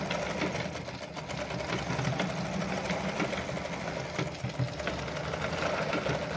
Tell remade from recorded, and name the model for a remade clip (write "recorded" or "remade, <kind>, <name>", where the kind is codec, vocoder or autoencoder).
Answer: recorded